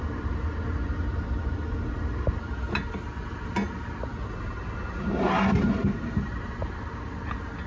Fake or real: real